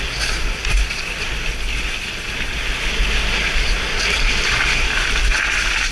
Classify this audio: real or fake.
real